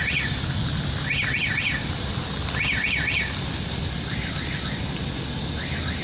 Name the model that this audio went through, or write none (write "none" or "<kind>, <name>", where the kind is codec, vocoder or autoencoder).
none